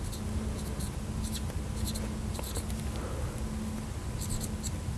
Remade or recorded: recorded